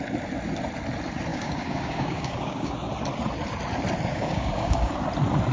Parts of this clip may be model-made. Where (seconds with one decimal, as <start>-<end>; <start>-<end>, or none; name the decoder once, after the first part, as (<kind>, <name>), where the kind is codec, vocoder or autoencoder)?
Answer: 1.3-2.9 (codec, DAC); 4.1-4.9